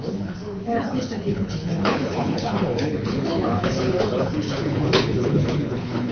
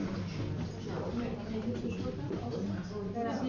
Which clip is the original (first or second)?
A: second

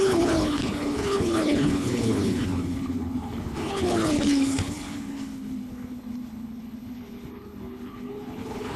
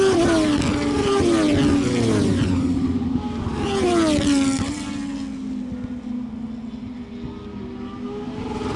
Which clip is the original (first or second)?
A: second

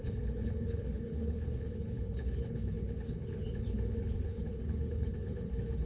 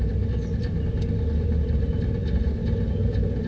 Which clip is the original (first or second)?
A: second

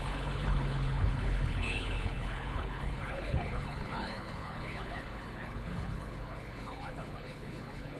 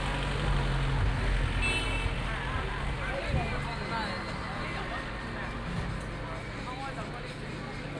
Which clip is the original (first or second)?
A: second